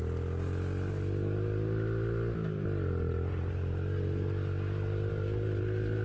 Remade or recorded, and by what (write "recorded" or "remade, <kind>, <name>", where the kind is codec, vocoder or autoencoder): recorded